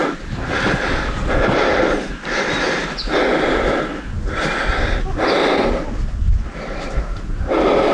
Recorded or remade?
recorded